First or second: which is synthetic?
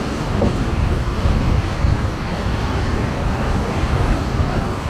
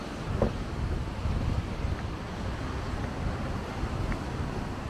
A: first